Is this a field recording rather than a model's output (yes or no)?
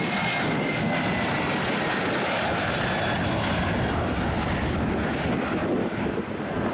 yes